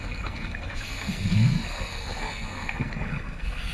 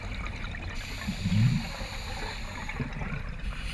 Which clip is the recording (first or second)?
second